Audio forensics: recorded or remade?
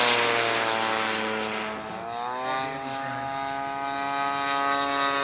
recorded